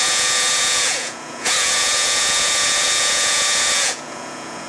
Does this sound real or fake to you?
fake